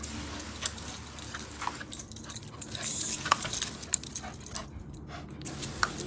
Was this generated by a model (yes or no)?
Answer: no